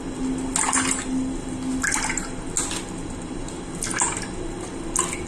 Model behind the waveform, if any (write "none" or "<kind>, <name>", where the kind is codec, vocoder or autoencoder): none